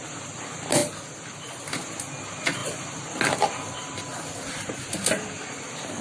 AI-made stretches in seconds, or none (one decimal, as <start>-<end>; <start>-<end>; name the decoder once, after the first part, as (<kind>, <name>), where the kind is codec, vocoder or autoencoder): none